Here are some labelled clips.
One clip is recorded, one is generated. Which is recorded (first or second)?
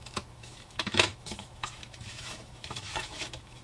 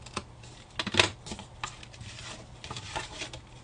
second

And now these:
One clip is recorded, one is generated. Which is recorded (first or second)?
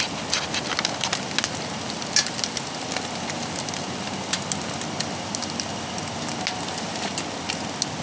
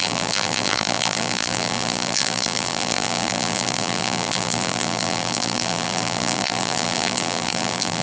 first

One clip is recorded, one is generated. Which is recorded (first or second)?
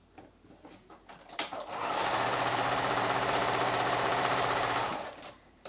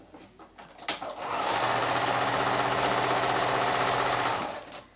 second